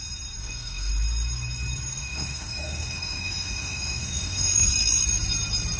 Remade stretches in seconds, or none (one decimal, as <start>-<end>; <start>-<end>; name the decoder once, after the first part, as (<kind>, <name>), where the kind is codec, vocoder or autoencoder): 0.4-0.9 (autoencoder, DAC-VAE); 2.0-4.7